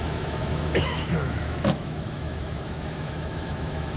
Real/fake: fake